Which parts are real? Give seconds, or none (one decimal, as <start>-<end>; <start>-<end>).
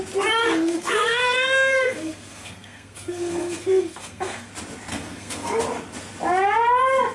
0.0-0.4; 4.5-4.9; 5.6-7.1